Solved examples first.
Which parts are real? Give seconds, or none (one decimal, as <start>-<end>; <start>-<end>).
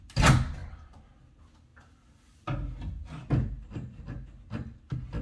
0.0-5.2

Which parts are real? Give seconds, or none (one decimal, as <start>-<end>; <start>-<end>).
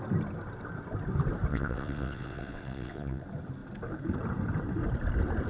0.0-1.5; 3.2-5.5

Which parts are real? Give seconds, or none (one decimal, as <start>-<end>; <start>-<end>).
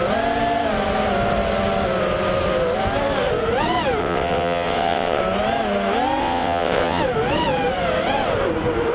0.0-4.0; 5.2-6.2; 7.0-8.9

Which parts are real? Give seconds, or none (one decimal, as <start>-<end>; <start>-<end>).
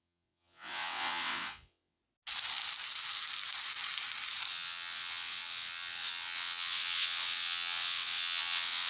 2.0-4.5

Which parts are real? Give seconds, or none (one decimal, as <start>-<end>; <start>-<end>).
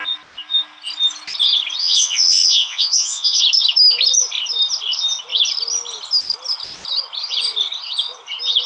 0.0-1.8; 3.4-8.7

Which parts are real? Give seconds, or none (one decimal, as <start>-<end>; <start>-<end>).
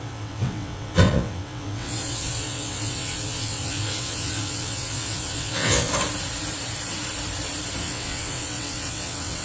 5.9-7.8